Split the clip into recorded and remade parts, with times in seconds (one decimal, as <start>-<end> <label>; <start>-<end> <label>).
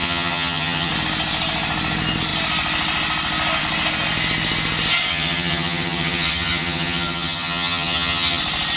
0.0-0.9 remade; 0.9-5.1 recorded; 5.1-8.4 remade; 8.4-8.8 recorded